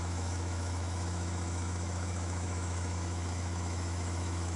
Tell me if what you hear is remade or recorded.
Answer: remade